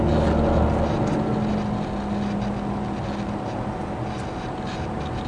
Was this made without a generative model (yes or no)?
yes